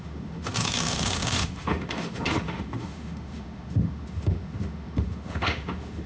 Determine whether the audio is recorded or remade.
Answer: remade